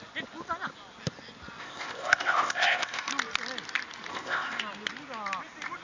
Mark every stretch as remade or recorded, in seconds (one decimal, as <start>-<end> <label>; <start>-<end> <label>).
0.0-1.6 recorded; 1.6-3.1 remade; 3.1-4.1 recorded; 4.1-4.6 remade; 4.6-5.8 recorded

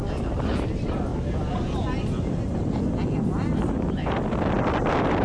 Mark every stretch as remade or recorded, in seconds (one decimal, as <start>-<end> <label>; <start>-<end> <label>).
0.0-5.2 recorded

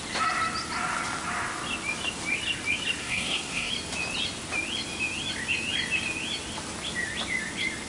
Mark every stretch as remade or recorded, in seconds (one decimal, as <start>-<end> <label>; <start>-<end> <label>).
0.0-3.0 recorded; 3.0-3.7 remade; 3.7-7.9 recorded

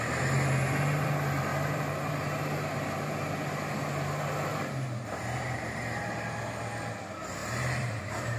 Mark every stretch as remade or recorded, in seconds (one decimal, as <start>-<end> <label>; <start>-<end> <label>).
0.0-1.5 recorded; 1.5-2.1 remade; 2.1-4.5 recorded; 4.5-5.8 remade; 5.8-7.4 recorded; 7.4-8.4 remade